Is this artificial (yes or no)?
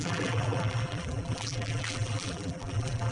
yes